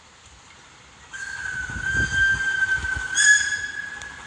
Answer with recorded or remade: recorded